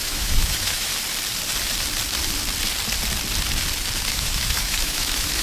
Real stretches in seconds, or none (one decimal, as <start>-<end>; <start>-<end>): 0.9-4.1